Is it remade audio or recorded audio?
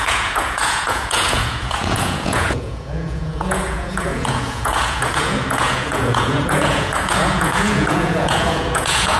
remade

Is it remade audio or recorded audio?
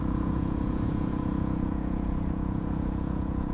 remade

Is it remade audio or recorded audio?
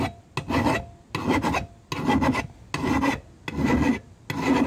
recorded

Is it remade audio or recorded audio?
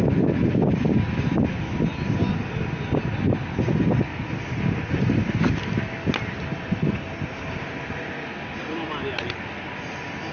recorded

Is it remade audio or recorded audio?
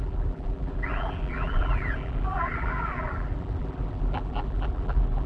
remade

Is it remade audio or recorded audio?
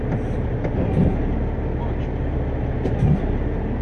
recorded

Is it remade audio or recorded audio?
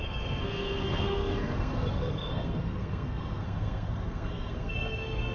remade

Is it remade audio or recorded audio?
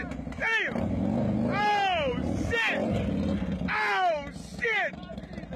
recorded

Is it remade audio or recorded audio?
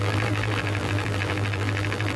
remade